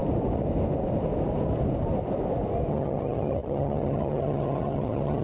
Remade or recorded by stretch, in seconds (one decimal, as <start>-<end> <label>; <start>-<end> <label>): 0.0-2.7 recorded; 2.7-5.2 remade